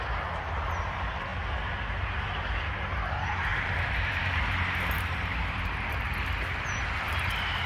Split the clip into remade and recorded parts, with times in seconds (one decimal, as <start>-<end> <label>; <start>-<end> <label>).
0.0-3.5 recorded; 3.5-6.0 remade; 6.0-7.7 recorded